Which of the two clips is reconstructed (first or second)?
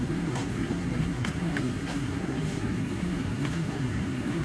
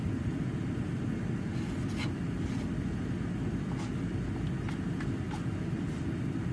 first